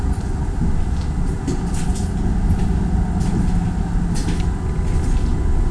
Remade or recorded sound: recorded